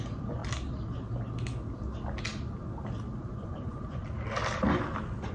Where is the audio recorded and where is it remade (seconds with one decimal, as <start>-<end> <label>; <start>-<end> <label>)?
0.0-0.4 remade; 0.4-3.3 recorded; 3.3-4.0 remade; 4.0-5.3 recorded